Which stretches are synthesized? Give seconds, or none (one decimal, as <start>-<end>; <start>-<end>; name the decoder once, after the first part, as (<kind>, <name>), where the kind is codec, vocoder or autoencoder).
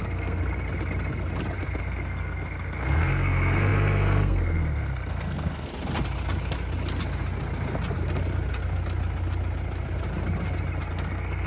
0.0-0.4 (codec, SNAC); 1.8-5.7; 10.9-11.5